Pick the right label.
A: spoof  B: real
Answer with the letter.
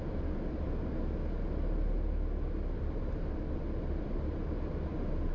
B